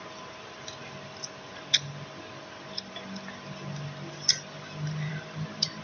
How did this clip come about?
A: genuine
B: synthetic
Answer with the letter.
B